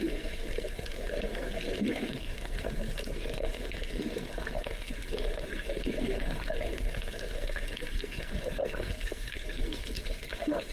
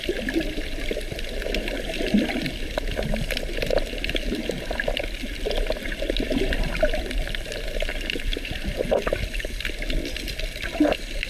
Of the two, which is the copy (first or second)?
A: first